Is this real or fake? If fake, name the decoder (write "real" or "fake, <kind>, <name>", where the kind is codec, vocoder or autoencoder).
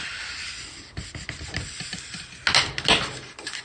real